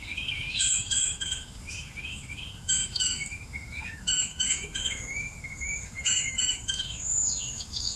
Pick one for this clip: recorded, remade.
remade